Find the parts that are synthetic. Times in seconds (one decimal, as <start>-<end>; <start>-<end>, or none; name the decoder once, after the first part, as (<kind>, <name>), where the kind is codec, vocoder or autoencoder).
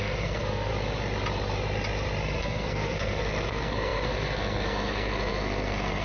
0.0-0.7 (codec, SNAC); 2.4-6.0